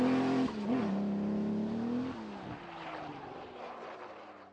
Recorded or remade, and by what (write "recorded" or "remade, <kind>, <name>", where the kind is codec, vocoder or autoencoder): recorded